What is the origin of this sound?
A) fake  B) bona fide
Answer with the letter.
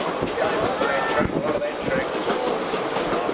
B